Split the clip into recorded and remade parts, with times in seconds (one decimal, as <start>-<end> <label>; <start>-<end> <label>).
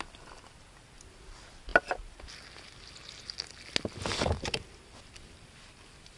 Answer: 0.0-6.2 recorded